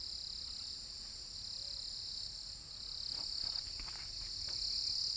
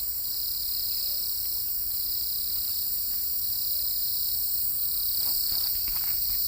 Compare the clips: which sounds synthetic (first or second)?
second